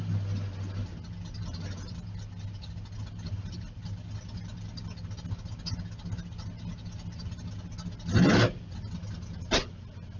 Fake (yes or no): no